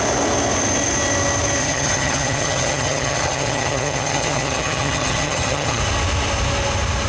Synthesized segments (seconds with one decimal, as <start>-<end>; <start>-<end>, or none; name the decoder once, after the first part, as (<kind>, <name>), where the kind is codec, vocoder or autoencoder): 1.6-5.8 (vocoder, HiFi-GAN)